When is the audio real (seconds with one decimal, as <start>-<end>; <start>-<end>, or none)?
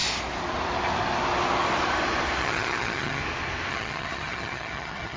0.0-2.4; 3.2-3.7